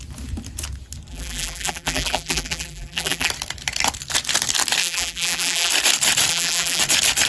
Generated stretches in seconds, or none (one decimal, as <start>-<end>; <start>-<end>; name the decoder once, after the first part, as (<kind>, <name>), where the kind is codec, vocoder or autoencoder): 1.1-3.3 (vocoder, BigVGAN v2); 4.8-5.7; 6.3-6.8